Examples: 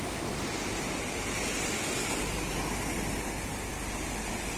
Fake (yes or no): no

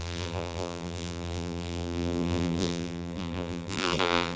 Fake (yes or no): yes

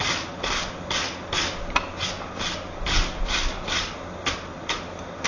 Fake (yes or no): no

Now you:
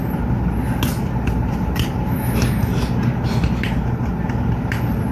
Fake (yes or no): no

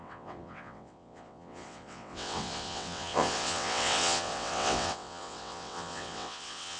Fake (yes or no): yes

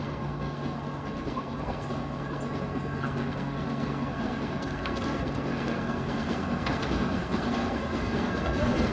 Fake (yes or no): yes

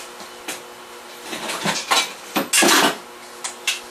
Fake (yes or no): no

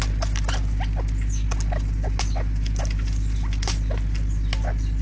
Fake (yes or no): no